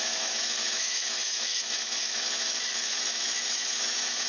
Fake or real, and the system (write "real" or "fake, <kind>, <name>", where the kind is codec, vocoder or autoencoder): fake, autoencoder, DAC-VAE